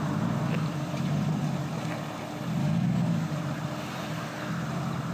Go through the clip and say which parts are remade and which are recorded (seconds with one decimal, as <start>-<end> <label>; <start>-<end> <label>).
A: 0.0-2.6 recorded; 2.6-3.3 remade; 3.3-5.1 recorded